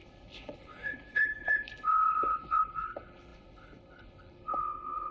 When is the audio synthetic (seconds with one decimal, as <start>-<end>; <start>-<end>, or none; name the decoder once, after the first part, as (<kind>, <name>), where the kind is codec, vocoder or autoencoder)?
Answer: 0.0-5.1 (codec, HILCodec)